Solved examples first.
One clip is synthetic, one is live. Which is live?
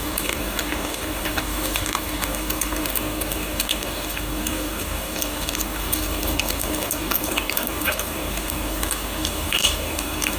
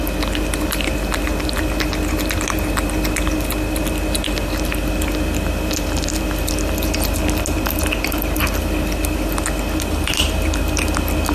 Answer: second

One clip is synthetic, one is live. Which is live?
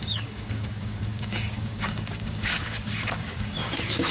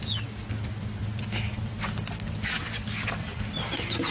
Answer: second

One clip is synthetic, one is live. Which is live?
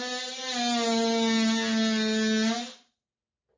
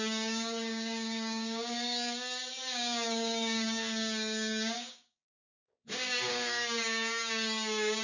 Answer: first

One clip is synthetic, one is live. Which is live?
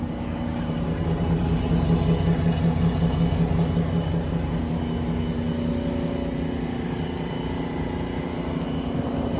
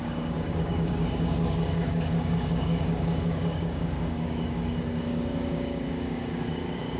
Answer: first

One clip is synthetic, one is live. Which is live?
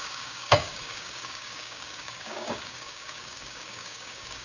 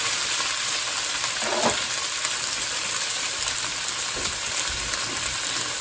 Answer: second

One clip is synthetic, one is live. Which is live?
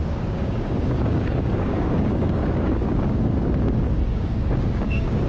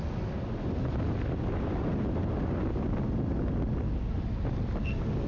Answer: second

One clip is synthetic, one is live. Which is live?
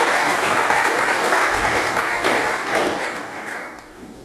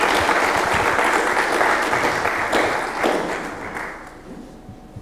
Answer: second